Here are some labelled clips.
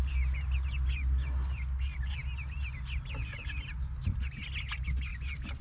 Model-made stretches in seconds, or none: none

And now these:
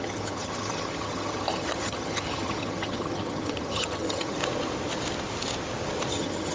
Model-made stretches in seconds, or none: 0.0-4.4 (vocoder, HiFi-GAN); 6.1-6.5

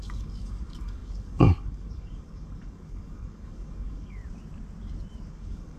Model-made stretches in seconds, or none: 0.0-4.2 (codec, DAC); 5.3-5.8

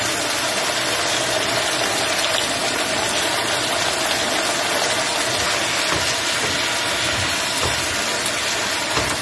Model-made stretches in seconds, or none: none

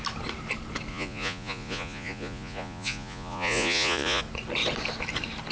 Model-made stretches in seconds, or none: 0.9-4.2 (vocoder, Vocos)

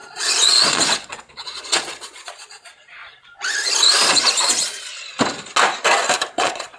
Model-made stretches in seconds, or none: 0.0-3.0 (vocoder, Vocos); 4.1-4.9; 6.3-6.8

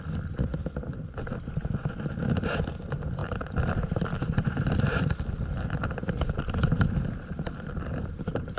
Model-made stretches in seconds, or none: 3.2-5.1 (vocoder, BigVGAN v2); 5.5-8.6

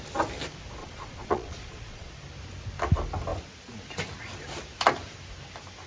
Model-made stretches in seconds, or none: 0.8-2.1 (vocoder, Vocos)